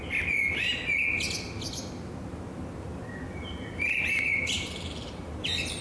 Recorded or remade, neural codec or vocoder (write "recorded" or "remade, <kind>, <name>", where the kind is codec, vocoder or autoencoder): recorded